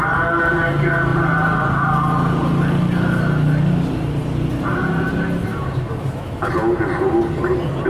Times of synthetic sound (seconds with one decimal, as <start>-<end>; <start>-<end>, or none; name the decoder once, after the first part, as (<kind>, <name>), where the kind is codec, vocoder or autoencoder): 5.5-6.5 (autoencoder, DAC-VAE)